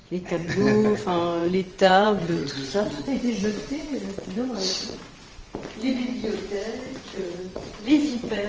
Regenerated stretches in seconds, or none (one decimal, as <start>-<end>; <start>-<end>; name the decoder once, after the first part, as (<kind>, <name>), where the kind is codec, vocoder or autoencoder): 0.0-0.6 (vocoder, WaveNeXt); 1.4-5.0; 7.1-8.5